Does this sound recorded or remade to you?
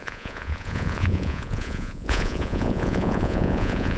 remade